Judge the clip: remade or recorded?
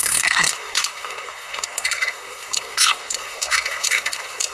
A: remade